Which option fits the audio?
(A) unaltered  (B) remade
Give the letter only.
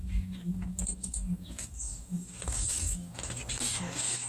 B